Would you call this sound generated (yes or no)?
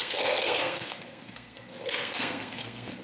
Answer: yes